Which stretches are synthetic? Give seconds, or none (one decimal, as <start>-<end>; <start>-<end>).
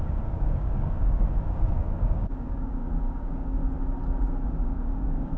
0.0-3.6; 4.7-5.4